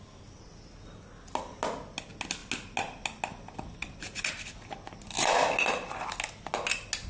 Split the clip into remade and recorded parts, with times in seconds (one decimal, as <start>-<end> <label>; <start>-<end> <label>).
0.0-7.1 recorded